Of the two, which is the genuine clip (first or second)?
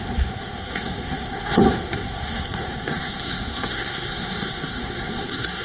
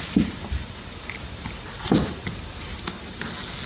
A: second